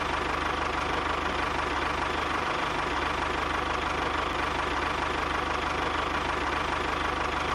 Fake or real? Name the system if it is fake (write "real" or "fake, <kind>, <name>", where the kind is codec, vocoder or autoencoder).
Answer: real